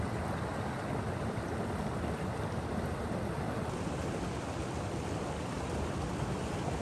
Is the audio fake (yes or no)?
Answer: no